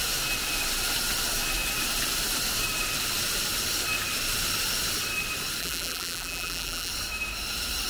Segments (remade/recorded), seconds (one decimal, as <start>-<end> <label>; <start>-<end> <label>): 0.0-5.6 recorded; 5.6-6.9 remade; 6.9-7.9 recorded